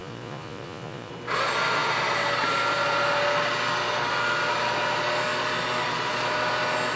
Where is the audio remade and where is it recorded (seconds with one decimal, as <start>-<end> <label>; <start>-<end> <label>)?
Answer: 0.0-1.1 remade; 1.1-7.0 recorded